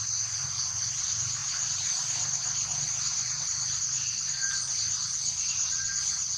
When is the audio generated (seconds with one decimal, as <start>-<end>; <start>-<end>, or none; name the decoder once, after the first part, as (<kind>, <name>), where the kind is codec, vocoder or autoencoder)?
none